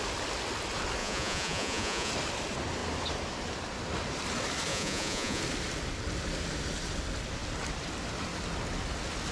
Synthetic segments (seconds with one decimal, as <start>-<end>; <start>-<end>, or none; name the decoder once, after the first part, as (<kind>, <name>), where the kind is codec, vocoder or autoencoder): 1.0-2.1 (vocoder, Vocos); 4.7-5.4